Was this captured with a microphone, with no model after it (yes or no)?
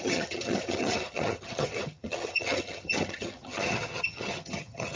no